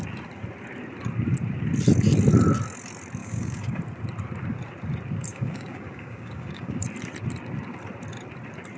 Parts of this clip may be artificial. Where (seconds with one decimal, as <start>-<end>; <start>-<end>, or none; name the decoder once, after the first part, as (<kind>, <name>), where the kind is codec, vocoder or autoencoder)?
3.2-3.8 (codec, DAC); 5.3-6.8